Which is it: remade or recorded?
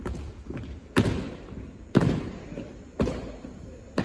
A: recorded